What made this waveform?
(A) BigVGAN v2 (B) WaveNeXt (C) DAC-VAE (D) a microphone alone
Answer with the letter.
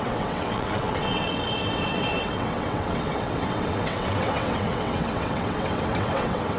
B